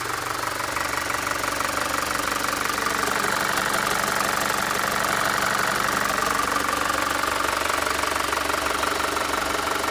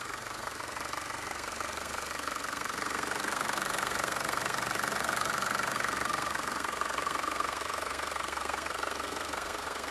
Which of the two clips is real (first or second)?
first